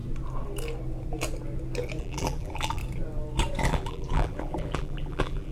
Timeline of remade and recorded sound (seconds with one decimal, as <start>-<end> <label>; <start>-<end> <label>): 0.0-2.0 recorded; 2.0-2.8 remade; 2.8-3.6 recorded; 3.6-5.5 remade